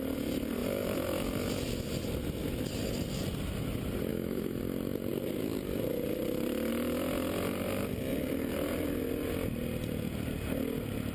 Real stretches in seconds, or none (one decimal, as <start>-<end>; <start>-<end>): 0.0-4.1; 4.6-11.1